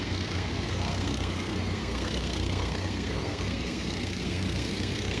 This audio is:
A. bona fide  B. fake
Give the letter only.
B